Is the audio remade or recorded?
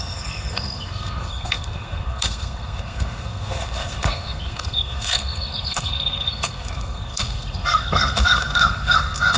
remade